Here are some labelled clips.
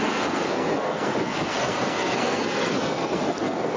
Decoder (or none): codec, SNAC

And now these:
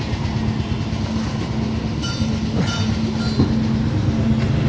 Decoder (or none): none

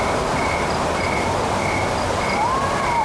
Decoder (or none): none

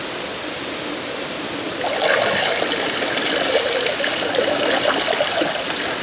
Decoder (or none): none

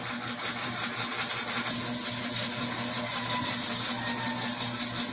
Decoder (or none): none